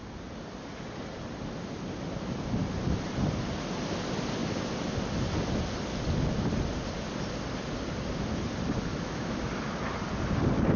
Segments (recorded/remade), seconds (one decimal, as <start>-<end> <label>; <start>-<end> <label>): 0.0-8.9 recorded; 8.9-9.4 remade; 9.4-10.8 recorded